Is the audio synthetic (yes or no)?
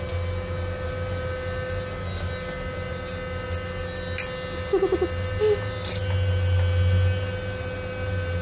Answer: no